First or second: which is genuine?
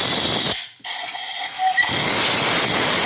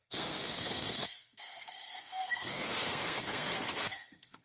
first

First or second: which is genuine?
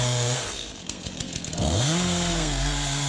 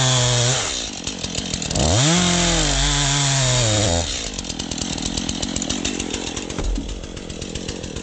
second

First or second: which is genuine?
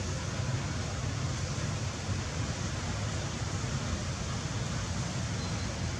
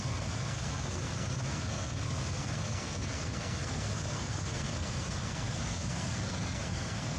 first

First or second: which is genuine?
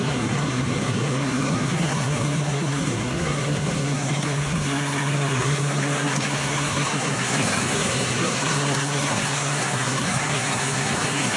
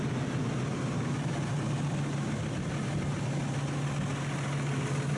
second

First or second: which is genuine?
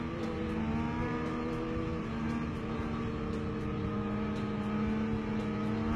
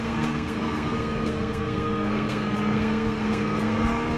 first